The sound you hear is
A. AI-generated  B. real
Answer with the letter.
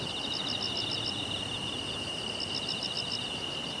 B